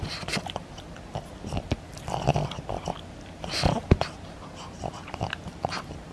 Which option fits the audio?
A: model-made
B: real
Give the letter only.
B